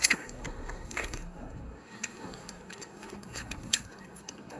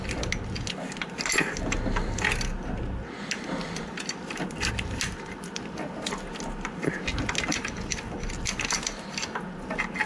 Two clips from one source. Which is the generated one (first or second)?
first